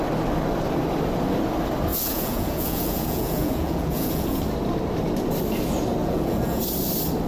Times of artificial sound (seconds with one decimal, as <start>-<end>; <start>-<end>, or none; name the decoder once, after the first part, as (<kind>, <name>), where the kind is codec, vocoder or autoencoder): 1.9-4.4 (vocoder, Vocos); 6.0-6.6